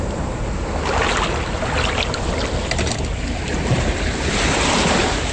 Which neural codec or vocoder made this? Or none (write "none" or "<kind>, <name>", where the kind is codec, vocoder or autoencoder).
none